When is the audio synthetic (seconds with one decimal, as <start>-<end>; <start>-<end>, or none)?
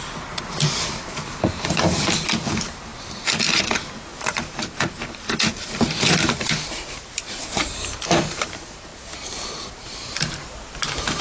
0.0-11.2